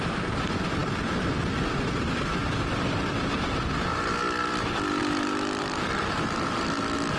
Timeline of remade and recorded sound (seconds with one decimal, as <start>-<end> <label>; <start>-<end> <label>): 0.0-7.2 recorded